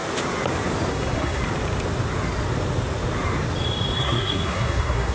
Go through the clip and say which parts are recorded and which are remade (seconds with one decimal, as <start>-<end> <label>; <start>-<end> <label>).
0.0-0.9 recorded; 0.9-1.4 remade; 1.4-4.0 recorded; 4.0-5.1 remade